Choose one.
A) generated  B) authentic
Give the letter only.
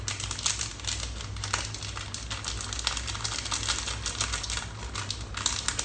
B